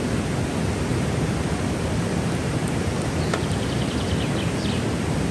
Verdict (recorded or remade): recorded